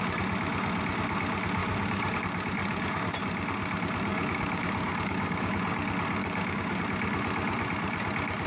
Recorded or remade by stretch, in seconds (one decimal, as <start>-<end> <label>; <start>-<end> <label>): 0.0-1.6 recorded; 1.6-2.2 remade; 2.2-2.6 recorded; 2.6-3.1 remade; 3.1-4.1 recorded; 4.1-5.5 remade; 5.5-6.2 recorded; 6.2-6.8 remade; 6.8-8.5 recorded

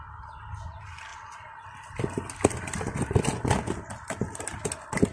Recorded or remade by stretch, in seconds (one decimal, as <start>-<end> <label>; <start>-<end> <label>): 0.0-5.1 recorded

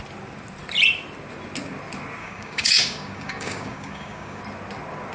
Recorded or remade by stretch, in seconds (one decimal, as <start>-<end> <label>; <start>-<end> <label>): 0.0-2.2 recorded; 2.2-4.4 remade; 4.4-5.1 recorded

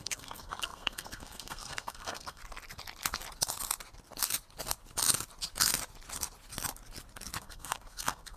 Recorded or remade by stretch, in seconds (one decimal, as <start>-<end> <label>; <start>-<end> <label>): 0.0-2.4 remade; 2.4-7.4 recorded; 7.4-8.4 remade